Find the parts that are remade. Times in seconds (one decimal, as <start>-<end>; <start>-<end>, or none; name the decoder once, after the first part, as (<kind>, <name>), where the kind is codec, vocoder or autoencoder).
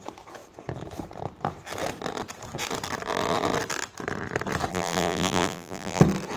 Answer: 4.7-6.0 (vocoder, BigVGAN v2)